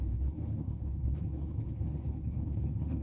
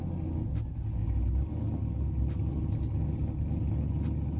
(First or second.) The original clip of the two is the second